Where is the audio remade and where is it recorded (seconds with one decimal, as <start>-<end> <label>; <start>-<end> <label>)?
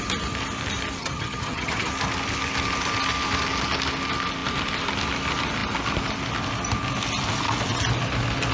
0.0-1.0 recorded; 1.0-1.9 remade; 1.9-8.5 recorded